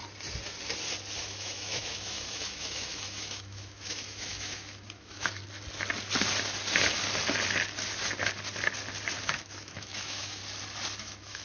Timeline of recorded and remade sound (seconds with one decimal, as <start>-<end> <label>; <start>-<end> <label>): 0.0-1.2 recorded; 1.2-5.4 remade; 5.4-9.2 recorded; 9.2-10.4 remade; 10.4-11.0 recorded; 11.0-11.4 remade